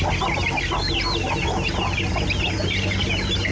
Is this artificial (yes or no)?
no